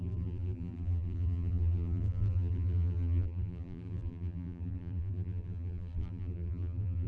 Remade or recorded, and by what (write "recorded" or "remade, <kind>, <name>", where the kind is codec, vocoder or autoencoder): remade, vocoder, BigVGAN v2